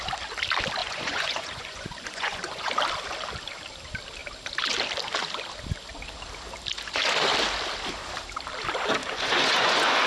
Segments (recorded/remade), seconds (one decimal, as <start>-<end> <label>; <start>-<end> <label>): 0.0-0.8 recorded; 0.8-2.7 remade; 2.7-9.0 recorded; 9.0-10.1 remade